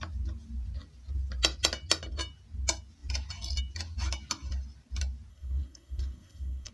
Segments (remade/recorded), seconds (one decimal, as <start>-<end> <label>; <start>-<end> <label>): 0.0-5.3 recorded; 5.3-6.7 remade